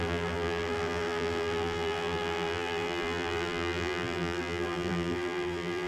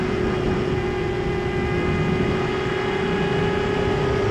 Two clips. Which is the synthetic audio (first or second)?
first